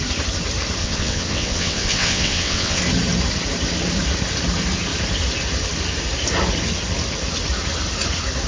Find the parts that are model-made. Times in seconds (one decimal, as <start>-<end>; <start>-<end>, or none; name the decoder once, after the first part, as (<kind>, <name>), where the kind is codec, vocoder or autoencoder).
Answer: 0.8-2.8 (vocoder, WaveNeXt)